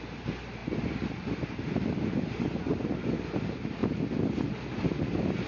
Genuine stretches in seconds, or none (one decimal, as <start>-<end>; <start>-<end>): 0.0-5.5